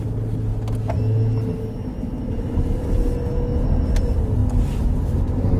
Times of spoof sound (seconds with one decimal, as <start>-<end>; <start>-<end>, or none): none